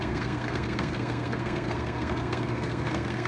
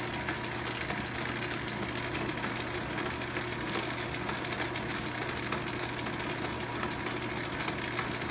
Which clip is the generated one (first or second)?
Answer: first